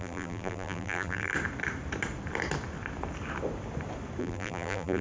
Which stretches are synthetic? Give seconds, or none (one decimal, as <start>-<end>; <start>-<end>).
0.0-1.3; 4.2-5.0